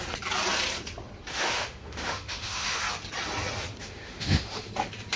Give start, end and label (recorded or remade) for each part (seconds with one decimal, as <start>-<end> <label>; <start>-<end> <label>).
0.0-1.3 recorded; 1.3-2.8 remade; 2.8-3.8 recorded; 3.8-4.7 remade; 4.7-5.2 recorded